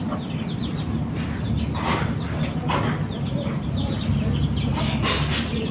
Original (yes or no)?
yes